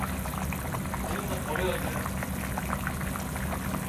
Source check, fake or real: real